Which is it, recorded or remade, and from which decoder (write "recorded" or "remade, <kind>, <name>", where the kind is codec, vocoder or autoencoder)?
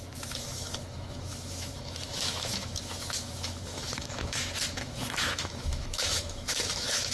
remade, autoencoder, DAC-VAE